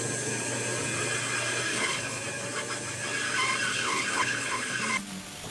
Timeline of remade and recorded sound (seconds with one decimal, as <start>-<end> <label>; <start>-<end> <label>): 0.0-1.7 recorded; 1.7-2.2 remade; 2.2-3.7 recorded; 3.7-4.8 remade; 4.8-5.5 recorded